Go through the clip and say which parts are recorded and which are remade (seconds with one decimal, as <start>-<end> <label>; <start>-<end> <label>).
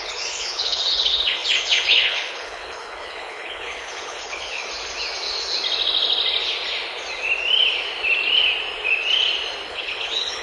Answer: 0.0-4.6 remade; 4.6-9.7 recorded; 9.7-10.4 remade